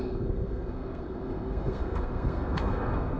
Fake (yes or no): yes